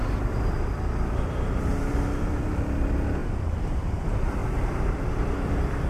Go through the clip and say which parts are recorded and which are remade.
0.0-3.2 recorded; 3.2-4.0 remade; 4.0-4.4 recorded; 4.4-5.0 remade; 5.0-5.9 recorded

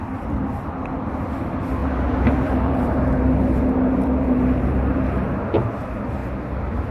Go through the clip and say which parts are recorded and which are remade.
0.0-1.8 recorded; 1.8-5.3 remade; 5.3-6.9 recorded

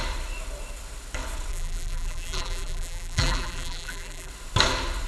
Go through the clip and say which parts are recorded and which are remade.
0.0-1.5 recorded; 1.5-4.3 remade; 4.3-5.1 recorded

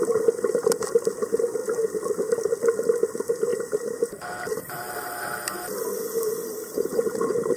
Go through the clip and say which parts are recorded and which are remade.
0.0-3.5 recorded; 3.5-5.1 remade; 5.1-7.6 recorded